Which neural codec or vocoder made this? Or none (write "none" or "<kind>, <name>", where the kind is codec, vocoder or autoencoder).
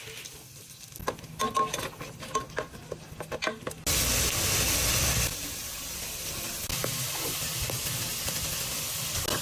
none